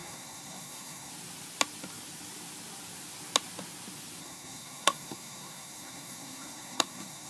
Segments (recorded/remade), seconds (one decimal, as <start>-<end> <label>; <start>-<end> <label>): 0.0-1.1 remade; 1.1-4.2 recorded; 4.2-7.3 remade